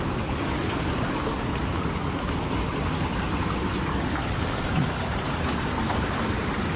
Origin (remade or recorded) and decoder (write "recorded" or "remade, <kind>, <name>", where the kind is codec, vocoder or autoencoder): recorded